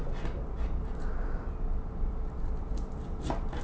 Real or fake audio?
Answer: real